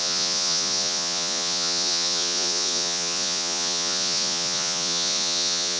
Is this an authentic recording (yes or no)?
no